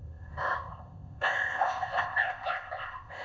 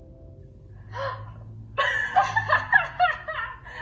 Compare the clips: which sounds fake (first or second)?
first